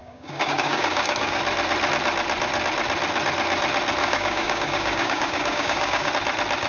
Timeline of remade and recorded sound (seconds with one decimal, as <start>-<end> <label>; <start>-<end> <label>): 0.0-1.4 remade; 1.4-4.0 recorded; 4.0-6.1 remade; 6.1-6.7 recorded